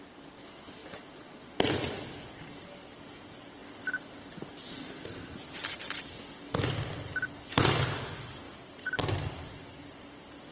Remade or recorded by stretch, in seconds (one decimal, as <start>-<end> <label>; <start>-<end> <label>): 0.0-0.8 recorded; 0.8-1.5 remade; 1.5-10.5 recorded